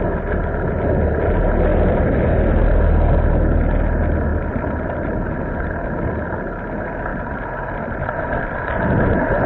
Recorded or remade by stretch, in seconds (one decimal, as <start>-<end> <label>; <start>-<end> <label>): 0.0-1.7 recorded; 1.7-3.3 remade; 3.3-4.3 recorded; 4.3-6.2 remade; 6.2-7.1 recorded; 7.1-8.0 remade; 8.0-9.5 recorded